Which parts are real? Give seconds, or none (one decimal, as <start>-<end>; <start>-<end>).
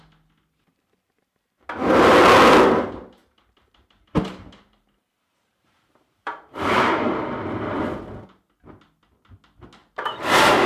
0.0-3.2; 7.8-9.8